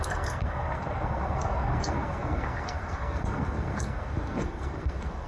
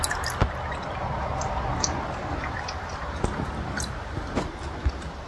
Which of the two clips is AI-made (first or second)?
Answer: first